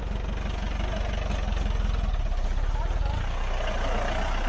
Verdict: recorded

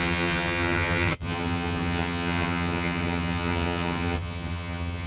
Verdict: remade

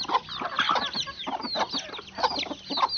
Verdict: recorded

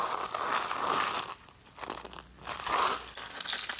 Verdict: recorded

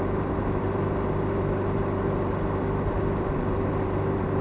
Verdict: recorded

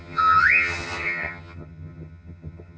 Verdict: remade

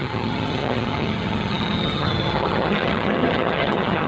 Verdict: remade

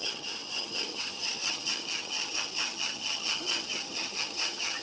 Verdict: remade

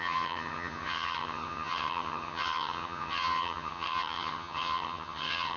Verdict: remade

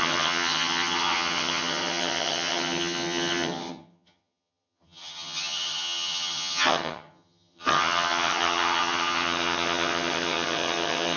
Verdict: remade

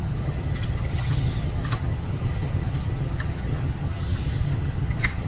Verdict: remade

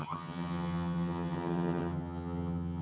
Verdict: remade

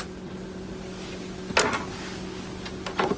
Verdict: recorded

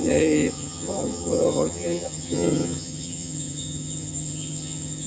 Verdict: remade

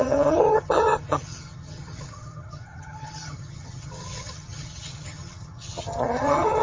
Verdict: remade